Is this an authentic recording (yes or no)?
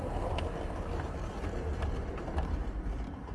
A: yes